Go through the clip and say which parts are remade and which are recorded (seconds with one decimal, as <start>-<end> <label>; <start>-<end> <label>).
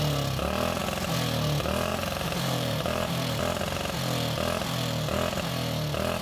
0.0-1.9 recorded; 1.9-3.4 remade; 3.4-6.2 recorded